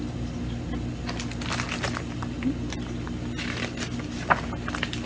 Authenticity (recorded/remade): recorded